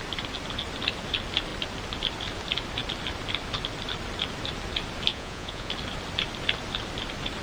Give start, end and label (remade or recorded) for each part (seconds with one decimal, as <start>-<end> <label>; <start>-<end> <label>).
0.0-5.1 recorded; 5.1-5.7 remade; 5.7-7.4 recorded